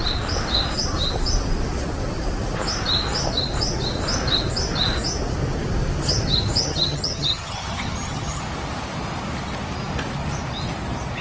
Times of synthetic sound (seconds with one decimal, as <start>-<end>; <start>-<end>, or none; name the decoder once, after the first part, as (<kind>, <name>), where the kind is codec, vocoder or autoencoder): 6.6-8.4 (vocoder, HiFi-GAN)